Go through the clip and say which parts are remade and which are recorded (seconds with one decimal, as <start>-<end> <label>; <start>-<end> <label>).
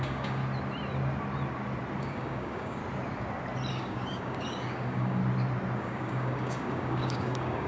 0.0-0.4 remade; 0.4-2.0 recorded; 2.0-2.8 remade; 2.8-3.7 recorded; 3.7-5.2 remade; 5.2-5.8 recorded; 5.8-7.7 remade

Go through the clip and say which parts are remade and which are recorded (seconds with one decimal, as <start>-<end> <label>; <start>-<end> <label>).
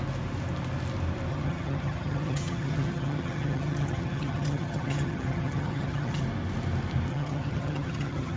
0.0-1.3 recorded; 1.3-6.2 remade; 6.2-7.1 recorded; 7.1-8.4 remade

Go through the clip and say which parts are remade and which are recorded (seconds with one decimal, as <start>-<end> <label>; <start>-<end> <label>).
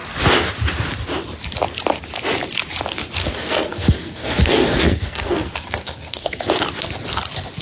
0.0-3.2 recorded; 3.2-6.5 remade; 6.5-7.6 recorded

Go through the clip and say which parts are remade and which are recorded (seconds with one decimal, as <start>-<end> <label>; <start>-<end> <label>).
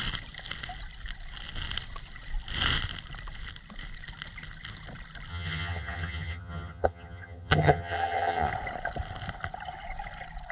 0.0-5.3 recorded; 5.3-8.5 remade; 8.5-10.5 recorded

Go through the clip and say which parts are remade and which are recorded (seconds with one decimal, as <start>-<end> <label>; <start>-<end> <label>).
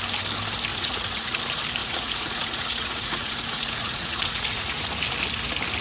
0.0-0.7 recorded; 0.7-1.4 remade; 1.4-1.8 recorded; 1.8-4.8 remade; 4.8-5.8 recorded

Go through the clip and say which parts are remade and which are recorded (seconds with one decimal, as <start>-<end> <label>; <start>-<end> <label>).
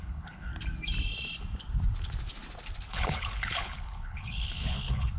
0.0-0.5 remade; 0.5-2.9 recorded; 2.9-5.2 remade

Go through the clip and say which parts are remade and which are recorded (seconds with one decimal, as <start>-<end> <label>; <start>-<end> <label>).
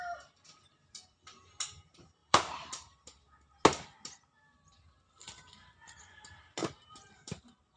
0.0-2.2 recorded; 2.2-2.7 remade; 2.7-6.6 recorded; 6.6-7.8 remade